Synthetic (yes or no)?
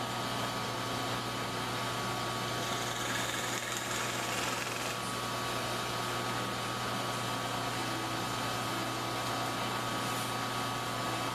no